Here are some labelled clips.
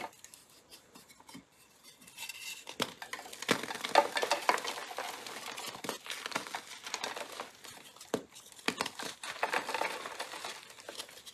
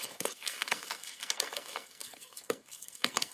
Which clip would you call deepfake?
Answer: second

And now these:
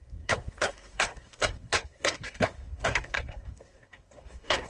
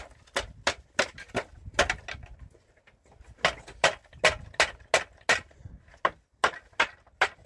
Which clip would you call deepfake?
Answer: first